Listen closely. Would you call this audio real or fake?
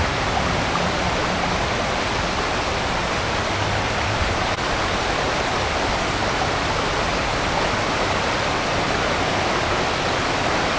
real